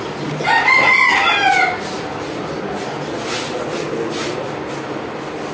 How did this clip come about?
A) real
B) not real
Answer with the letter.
A